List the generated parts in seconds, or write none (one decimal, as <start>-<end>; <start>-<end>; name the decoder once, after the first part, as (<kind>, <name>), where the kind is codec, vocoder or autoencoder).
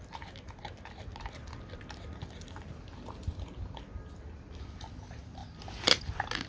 1.4-4.6 (vocoder, BigVGAN v2)